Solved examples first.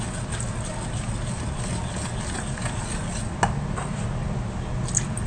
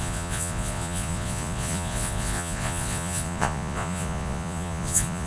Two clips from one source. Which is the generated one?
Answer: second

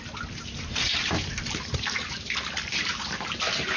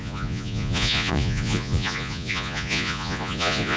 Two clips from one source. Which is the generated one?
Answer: second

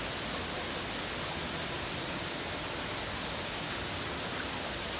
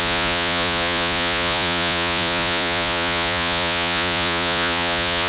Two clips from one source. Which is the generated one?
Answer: second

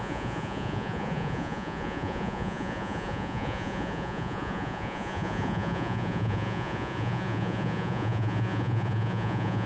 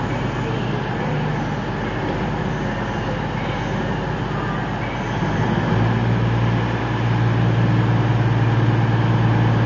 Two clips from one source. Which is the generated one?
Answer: first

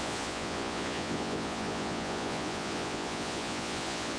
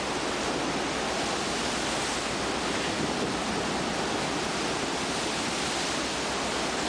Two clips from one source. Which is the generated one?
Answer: first